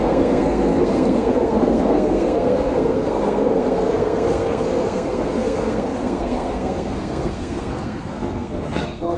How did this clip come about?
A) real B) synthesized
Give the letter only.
B